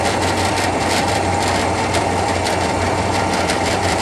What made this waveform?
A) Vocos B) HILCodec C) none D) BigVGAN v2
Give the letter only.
D